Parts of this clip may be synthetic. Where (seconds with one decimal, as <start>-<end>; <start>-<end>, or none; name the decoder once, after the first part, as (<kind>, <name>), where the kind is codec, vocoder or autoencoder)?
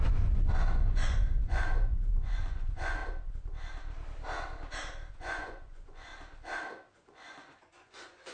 0.0-3.0 (vocoder, Vocos); 5.1-6.1; 6.9-8.3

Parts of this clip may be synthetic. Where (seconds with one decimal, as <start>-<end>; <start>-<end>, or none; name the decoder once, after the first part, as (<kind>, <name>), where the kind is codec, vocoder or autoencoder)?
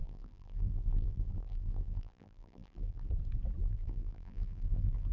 0.0-3.1 (vocoder, BigVGAN v2); 3.6-5.1